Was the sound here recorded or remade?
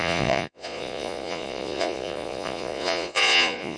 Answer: remade